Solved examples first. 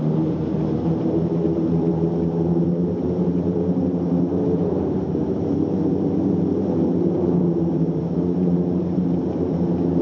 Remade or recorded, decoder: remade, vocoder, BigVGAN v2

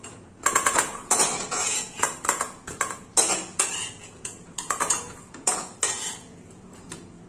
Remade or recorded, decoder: remade, vocoder, Vocos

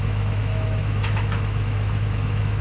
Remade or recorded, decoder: remade, autoencoder, DAC-VAE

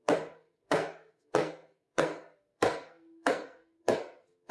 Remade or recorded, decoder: remade, codec, SNAC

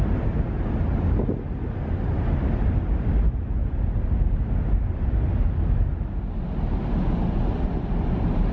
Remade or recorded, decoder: recorded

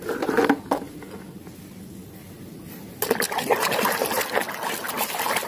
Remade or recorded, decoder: recorded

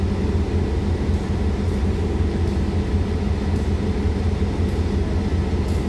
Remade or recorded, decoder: recorded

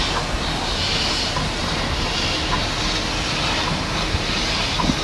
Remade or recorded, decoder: recorded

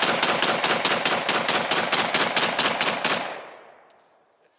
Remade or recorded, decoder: recorded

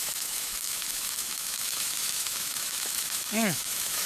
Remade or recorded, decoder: remade, autoencoder, DAC-VAE